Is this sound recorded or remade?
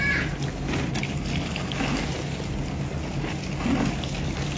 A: recorded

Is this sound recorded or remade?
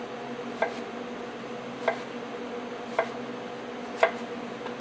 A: recorded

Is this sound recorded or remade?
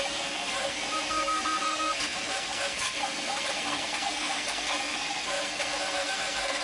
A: remade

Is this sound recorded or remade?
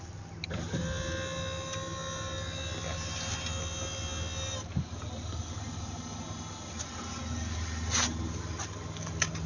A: recorded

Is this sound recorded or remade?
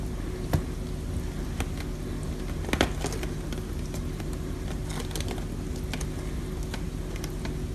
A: recorded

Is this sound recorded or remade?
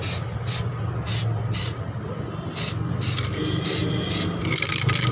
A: recorded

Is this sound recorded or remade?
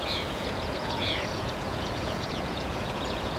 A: remade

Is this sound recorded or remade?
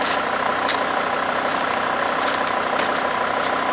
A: recorded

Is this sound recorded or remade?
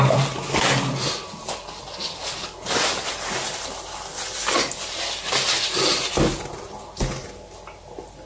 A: recorded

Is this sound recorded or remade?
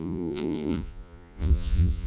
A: remade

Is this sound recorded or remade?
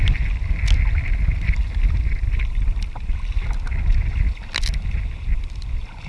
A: recorded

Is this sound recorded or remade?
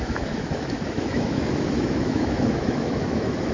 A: remade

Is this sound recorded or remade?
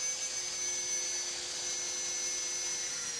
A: recorded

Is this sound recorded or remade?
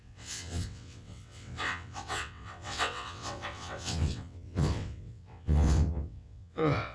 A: remade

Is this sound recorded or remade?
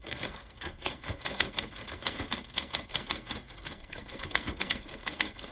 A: remade